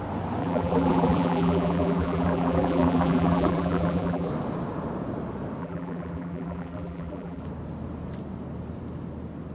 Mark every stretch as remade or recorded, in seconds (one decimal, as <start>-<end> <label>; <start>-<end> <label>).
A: 0.0-0.4 recorded; 0.4-4.3 remade; 4.3-5.6 recorded; 5.6-7.4 remade; 7.4-9.5 recorded